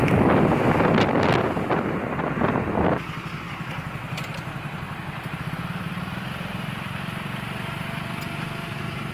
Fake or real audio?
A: real